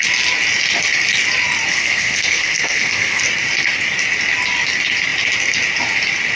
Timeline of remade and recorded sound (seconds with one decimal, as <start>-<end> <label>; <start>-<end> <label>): 0.0-1.7 recorded; 1.7-3.2 remade; 3.2-6.4 recorded